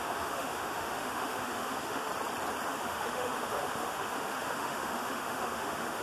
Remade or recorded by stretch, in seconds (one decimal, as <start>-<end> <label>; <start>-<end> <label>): 0.0-2.1 remade; 2.1-2.7 recorded; 2.7-6.0 remade